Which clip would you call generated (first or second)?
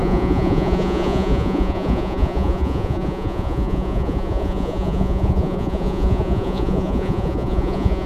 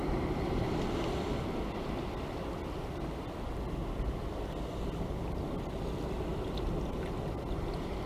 first